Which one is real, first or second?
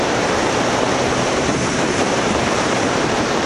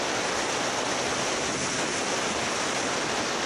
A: second